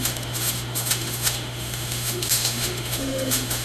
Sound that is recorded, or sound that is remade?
remade